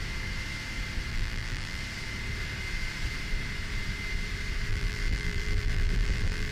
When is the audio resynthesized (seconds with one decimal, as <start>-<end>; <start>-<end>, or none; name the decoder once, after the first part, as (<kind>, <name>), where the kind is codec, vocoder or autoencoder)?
1.1-1.8 (vocoder, BigVGAN v2); 4.7-6.5